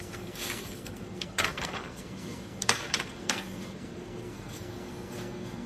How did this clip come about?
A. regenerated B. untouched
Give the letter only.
A